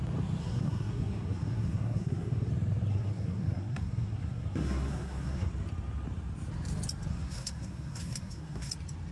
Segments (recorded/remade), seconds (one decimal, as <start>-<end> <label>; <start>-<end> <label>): 0.0-0.4 recorded; 0.4-2.5 remade; 2.5-2.9 recorded; 2.9-5.5 remade; 5.5-7.1 recorded; 7.1-8.7 remade; 8.7-9.1 recorded